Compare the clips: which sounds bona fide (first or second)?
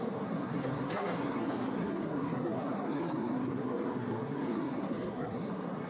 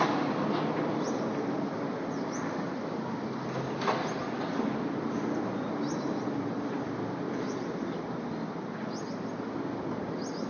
second